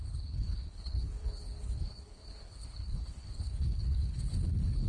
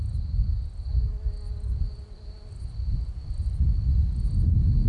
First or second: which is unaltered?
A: second